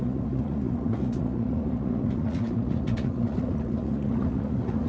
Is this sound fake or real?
fake